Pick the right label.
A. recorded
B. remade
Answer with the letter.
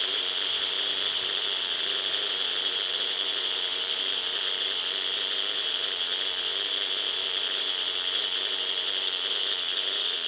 B